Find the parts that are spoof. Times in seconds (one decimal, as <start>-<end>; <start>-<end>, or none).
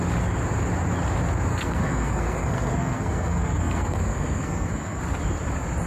1.5-5.0